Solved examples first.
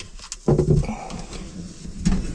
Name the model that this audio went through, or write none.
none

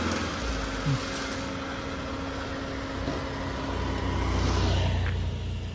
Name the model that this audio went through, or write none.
none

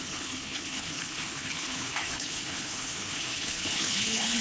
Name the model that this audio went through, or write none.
codec, HILCodec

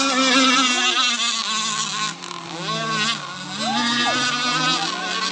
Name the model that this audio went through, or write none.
none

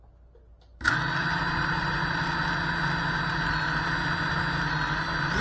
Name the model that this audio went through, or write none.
none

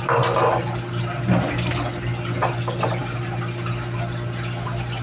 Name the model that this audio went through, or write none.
none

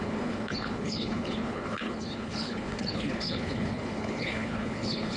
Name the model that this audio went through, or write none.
codec, HILCodec